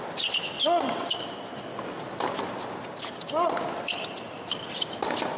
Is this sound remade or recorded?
recorded